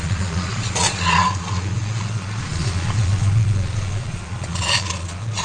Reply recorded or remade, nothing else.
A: remade